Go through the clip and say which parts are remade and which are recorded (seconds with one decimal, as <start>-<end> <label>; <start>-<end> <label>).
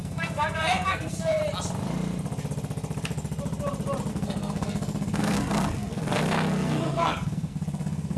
0.0-1.4 remade; 1.4-4.1 recorded; 4.1-8.2 remade